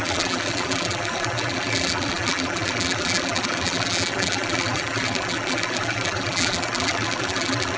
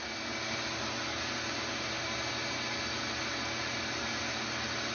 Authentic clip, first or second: second